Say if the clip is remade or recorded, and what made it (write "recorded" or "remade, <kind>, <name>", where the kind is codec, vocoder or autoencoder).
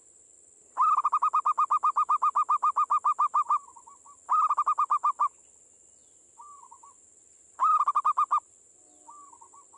recorded